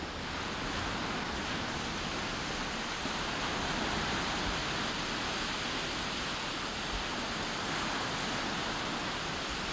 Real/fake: real